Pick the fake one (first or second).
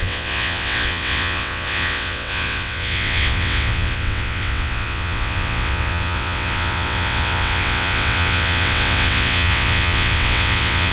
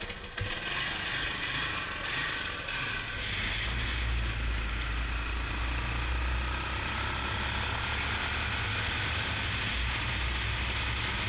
first